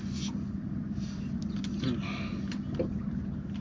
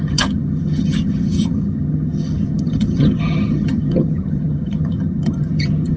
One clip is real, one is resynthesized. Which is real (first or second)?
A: first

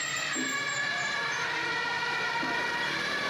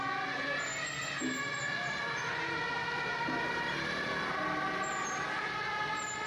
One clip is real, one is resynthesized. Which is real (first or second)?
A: second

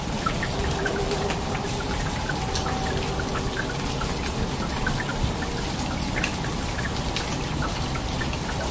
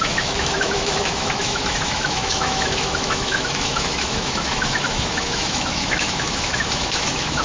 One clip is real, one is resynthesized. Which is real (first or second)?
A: first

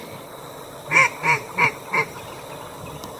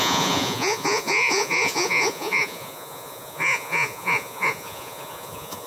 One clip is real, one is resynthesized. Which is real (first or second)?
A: first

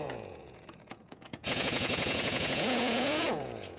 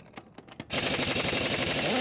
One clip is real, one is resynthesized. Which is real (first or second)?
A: second